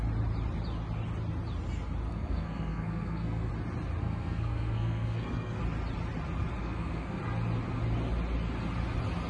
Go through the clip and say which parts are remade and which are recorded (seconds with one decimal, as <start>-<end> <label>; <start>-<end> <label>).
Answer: 0.0-2.1 recorded; 2.1-3.5 remade; 3.5-4.0 recorded; 4.0-5.6 remade; 5.6-6.6 recorded; 6.6-7.2 remade; 7.2-9.3 recorded